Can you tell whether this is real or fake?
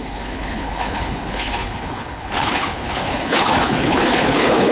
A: fake